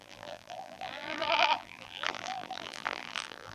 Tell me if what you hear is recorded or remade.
remade